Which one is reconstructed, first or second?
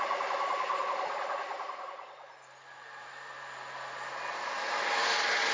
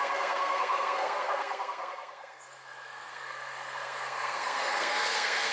second